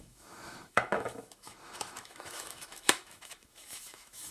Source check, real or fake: fake